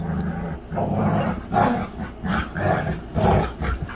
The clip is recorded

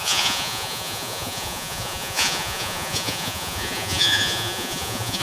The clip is remade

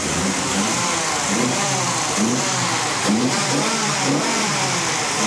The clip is remade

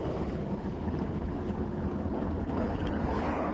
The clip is remade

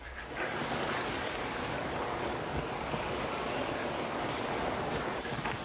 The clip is remade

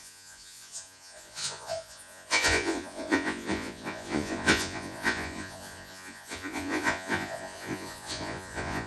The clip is remade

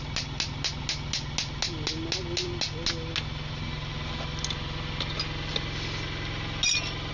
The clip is recorded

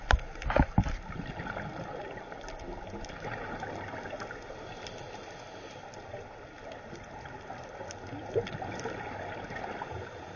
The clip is recorded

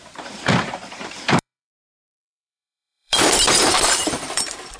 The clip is remade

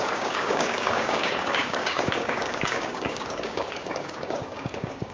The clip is remade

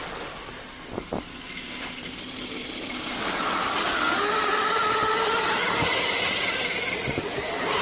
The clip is recorded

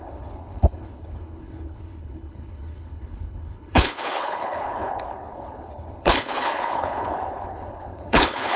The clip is remade